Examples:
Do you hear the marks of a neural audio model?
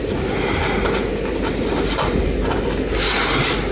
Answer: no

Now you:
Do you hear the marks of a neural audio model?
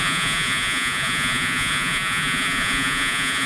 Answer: yes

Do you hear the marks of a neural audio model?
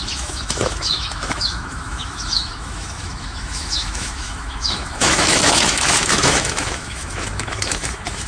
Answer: yes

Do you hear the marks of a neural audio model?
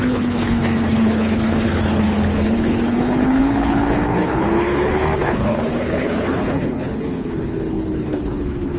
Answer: yes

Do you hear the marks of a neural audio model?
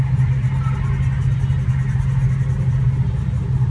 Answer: no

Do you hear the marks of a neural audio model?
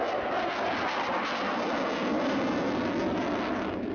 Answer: no